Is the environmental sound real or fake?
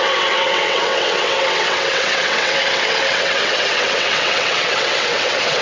fake